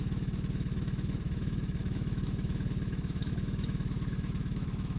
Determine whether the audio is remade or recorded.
remade